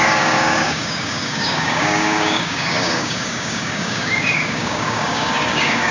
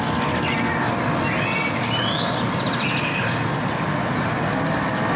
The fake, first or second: first